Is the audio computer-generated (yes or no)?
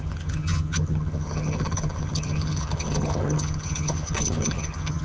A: yes